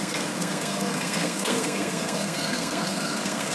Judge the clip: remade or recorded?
remade